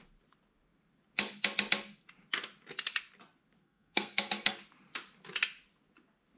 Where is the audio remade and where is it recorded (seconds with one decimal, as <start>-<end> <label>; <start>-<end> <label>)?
0.0-3.6 recorded; 3.6-4.6 remade; 4.6-6.4 recorded

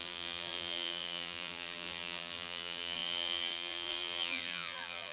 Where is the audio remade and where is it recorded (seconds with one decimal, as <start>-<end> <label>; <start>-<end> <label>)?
0.0-5.1 remade

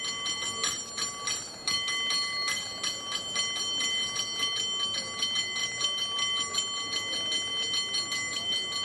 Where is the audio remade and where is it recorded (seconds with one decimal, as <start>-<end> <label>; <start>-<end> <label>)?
0.0-8.8 recorded

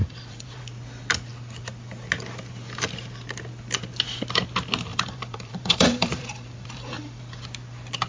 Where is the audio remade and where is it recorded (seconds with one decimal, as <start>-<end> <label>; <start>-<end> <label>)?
0.0-0.6 remade; 0.6-4.9 recorded; 4.9-7.2 remade; 7.2-8.1 recorded